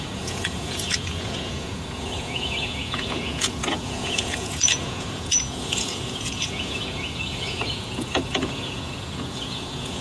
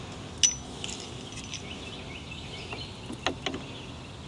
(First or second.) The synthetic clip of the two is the first